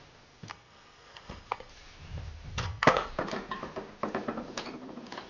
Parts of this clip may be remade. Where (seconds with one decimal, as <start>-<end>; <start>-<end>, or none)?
0.5-1.7; 2.5-3.1